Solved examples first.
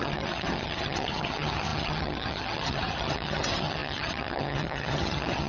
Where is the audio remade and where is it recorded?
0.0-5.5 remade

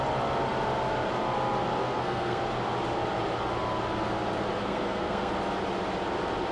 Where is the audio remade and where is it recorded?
0.0-1.8 recorded; 1.8-2.4 remade; 2.4-4.6 recorded; 4.6-5.3 remade; 5.3-6.5 recorded

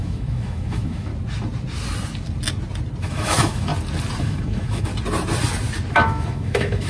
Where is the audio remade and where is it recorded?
0.0-1.1 remade; 1.1-3.0 recorded; 3.0-3.7 remade; 3.7-4.2 recorded; 4.2-4.9 remade; 4.9-5.9 recorded; 5.9-6.9 remade

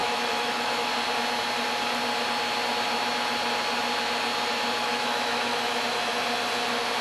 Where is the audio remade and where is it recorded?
0.0-0.9 remade; 0.9-4.8 recorded; 4.8-5.8 remade; 5.8-7.0 recorded

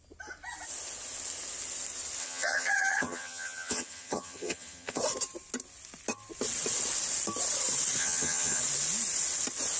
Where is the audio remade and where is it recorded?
0.0-2.2 recorded; 2.2-5.0 remade; 5.0-8.0 recorded; 8.0-8.6 remade; 8.6-9.8 recorded

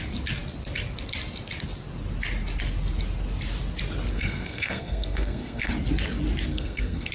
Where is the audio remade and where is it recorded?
0.0-4.1 recorded; 4.1-5.7 remade; 5.7-6.5 recorded; 6.5-7.1 remade